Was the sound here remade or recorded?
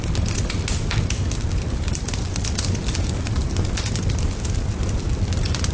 recorded